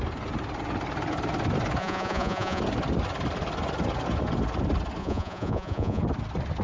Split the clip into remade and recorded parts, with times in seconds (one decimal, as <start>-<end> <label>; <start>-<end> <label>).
0.0-1.8 recorded; 1.8-2.6 remade; 2.6-5.0 recorded; 5.0-6.0 remade; 6.0-6.6 recorded